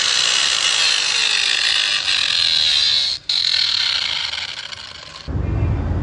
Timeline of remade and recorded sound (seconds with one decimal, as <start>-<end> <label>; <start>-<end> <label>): 0.0-6.0 recorded